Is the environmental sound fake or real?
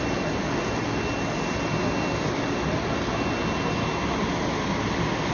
real